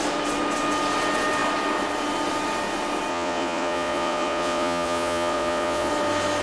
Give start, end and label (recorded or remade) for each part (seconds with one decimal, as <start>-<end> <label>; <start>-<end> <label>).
0.0-3.1 recorded; 3.1-5.9 remade; 5.9-6.4 recorded